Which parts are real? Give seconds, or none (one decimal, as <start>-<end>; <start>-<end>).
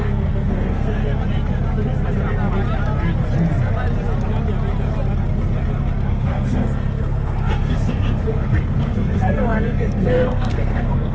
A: 1.0-6.1